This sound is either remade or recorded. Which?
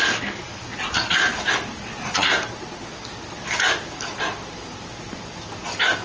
recorded